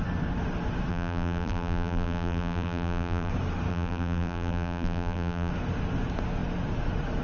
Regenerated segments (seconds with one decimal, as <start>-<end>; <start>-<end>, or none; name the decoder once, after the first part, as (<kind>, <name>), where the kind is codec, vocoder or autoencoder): 0.9-3.3 (vocoder, BigVGAN v2); 3.7-5.5